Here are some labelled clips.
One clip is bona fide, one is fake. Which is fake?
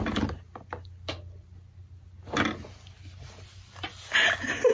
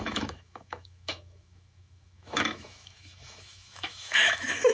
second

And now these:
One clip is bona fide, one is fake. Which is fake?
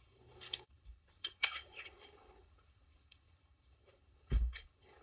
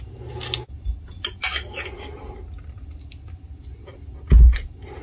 first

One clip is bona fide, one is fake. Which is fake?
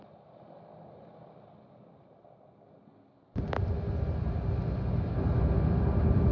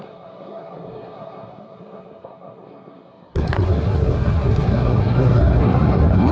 second